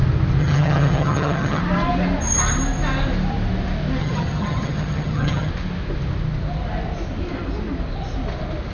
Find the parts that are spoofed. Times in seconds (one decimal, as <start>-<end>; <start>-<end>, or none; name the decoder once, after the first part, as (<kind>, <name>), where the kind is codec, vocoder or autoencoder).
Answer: 0.4-1.6 (vocoder, HiFi-GAN); 4.0-5.5